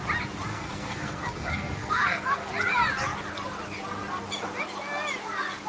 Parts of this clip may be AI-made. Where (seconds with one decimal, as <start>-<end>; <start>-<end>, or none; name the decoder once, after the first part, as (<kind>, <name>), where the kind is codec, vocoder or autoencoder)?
0.5-2.5 (codec, SNAC)